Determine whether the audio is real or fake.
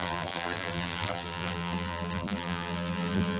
fake